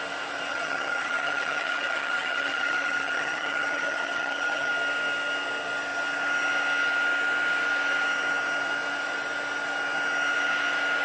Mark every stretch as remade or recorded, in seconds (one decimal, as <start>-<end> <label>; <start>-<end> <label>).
0.0-0.5 recorded; 0.5-4.7 remade; 4.7-11.0 recorded